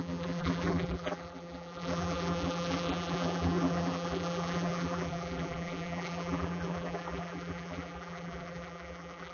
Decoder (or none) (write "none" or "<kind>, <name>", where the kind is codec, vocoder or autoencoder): vocoder, BigVGAN v2